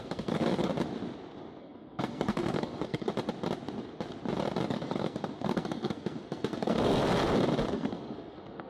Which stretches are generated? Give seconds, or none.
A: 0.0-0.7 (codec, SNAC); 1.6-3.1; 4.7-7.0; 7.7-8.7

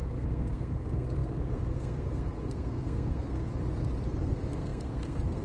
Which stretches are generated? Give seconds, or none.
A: 0.0-3.5 (codec, SNAC); 4.2-5.4

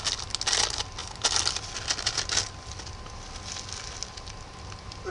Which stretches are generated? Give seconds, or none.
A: none

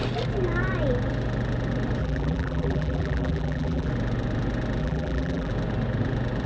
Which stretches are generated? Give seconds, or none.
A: 2.0-3.9 (vocoder, BigVGAN v2); 4.8-5.5

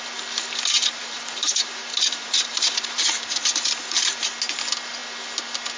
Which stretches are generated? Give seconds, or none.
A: 0.8-4.3 (vocoder, BigVGAN v2)

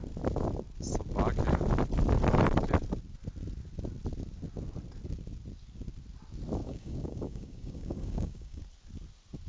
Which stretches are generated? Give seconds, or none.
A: 6.6-8.6 (codec, DAC)

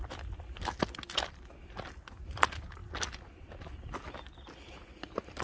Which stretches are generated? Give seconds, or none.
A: none

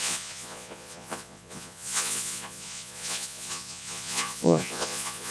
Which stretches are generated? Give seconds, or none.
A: 0.0-5.3 (vocoder, Vocos)